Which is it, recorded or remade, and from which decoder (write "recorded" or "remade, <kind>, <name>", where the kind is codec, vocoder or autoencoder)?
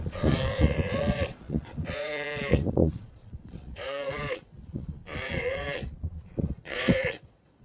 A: remade, vocoder, Vocos